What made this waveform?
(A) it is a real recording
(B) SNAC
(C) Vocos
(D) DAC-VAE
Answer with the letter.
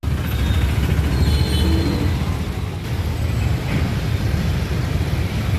A